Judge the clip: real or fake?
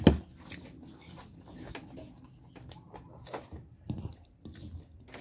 real